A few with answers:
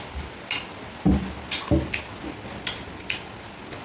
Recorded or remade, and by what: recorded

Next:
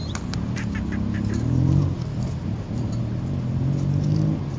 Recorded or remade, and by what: recorded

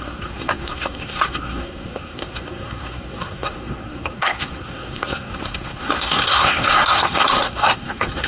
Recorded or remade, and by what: remade, codec, SNAC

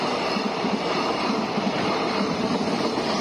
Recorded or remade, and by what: remade, vocoder, BigVGAN v2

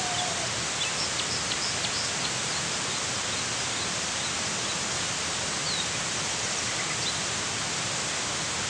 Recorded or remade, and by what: recorded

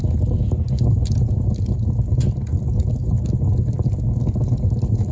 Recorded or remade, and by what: recorded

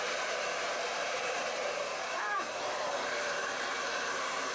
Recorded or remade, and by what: remade, vocoder, BigVGAN v2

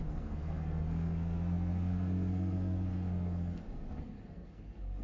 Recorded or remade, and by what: remade, codec, SNAC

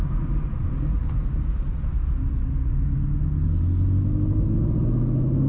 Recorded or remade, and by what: recorded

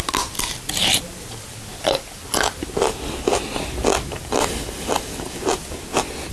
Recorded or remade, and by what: recorded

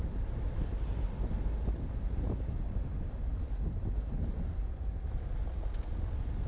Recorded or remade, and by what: recorded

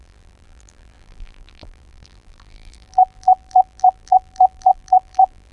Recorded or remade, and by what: remade, vocoder, BigVGAN v2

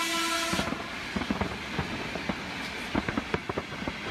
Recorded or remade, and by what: recorded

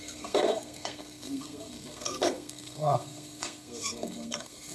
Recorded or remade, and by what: remade, codec, SNAC